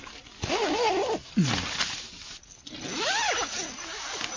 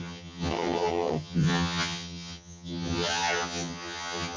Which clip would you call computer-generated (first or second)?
second